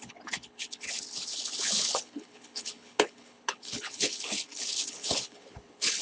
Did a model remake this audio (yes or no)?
yes